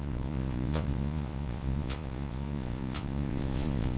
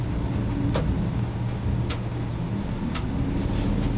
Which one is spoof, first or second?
first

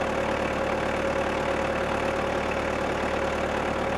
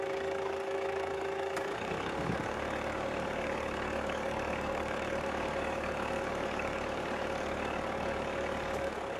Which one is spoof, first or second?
second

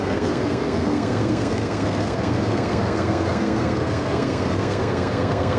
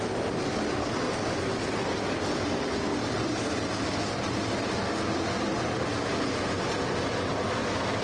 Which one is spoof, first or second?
first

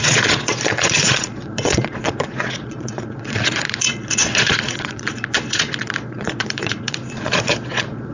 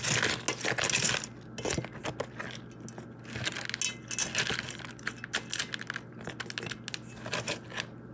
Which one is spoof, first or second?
first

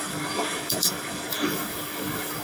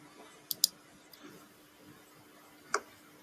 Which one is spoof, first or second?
first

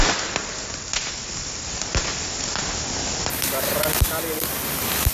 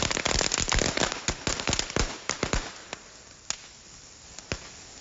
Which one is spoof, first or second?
first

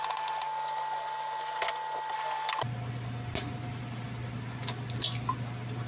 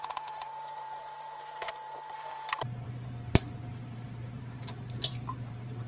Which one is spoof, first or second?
second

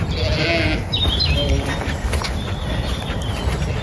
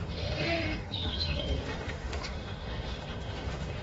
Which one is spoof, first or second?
second